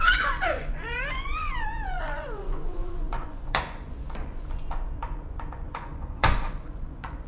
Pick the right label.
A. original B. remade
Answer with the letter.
B